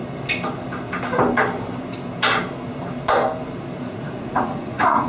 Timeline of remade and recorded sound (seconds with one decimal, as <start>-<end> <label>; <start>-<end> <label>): 0.0-3.9 recorded; 3.9-5.1 remade

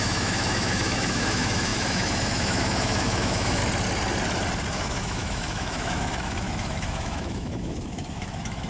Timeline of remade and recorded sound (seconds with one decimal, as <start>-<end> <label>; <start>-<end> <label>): 0.0-3.6 remade; 3.6-4.7 recorded; 4.7-8.7 remade

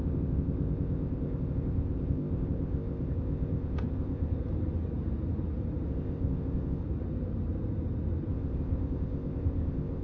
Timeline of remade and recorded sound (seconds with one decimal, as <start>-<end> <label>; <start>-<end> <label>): 0.0-4.4 remade; 4.4-5.9 recorded; 5.9-6.8 remade; 6.8-8.3 recorded; 8.3-10.0 remade